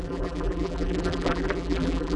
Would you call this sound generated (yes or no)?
yes